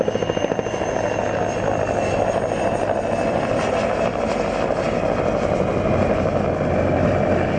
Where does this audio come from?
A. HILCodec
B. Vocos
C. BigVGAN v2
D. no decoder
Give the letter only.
D